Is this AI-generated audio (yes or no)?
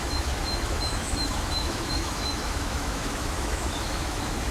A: yes